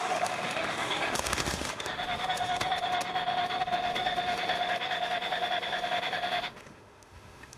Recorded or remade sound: remade